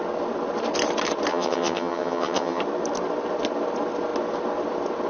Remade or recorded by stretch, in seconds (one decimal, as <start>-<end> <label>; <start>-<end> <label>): 0.0-1.3 recorded; 1.3-2.6 remade; 2.6-5.1 recorded